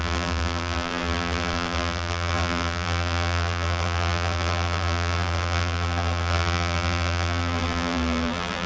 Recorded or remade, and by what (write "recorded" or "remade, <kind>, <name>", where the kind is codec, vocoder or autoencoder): remade, vocoder, BigVGAN v2